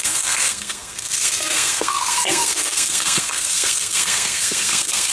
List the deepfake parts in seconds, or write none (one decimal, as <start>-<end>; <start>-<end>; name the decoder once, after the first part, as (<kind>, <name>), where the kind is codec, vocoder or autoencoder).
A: 0.0-5.1 (codec, SNAC)